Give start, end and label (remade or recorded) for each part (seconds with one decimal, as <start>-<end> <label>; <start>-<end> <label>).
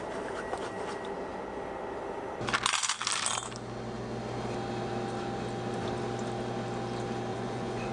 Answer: 0.0-7.3 recorded; 7.3-7.9 remade